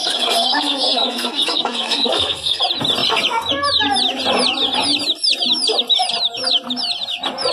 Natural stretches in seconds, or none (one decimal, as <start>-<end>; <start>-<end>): 2.6-7.5